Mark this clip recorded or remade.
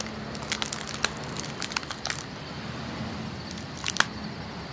recorded